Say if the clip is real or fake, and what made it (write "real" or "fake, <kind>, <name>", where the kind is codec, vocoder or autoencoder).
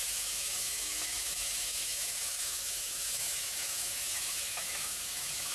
fake, autoencoder, DAC-VAE